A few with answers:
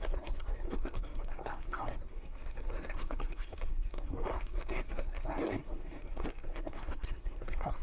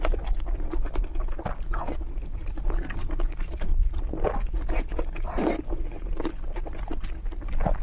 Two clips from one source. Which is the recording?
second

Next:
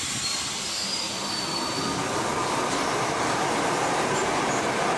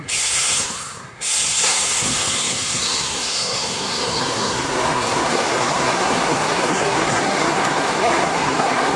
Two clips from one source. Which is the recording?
first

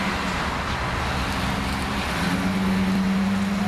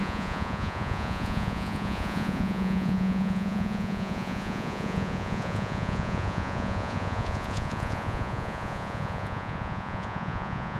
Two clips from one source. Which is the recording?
first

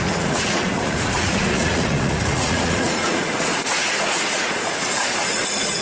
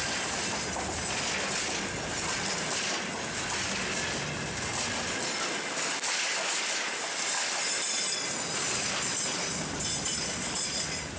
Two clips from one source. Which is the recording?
second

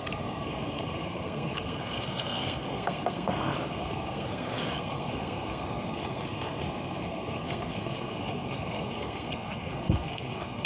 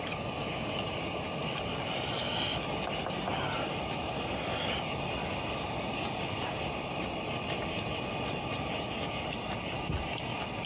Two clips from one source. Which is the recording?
second